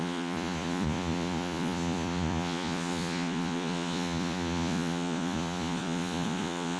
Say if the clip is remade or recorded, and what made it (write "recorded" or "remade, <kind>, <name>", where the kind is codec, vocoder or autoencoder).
remade, vocoder, Vocos